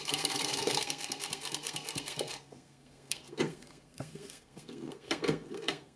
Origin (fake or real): fake